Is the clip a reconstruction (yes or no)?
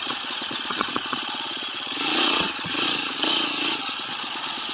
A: yes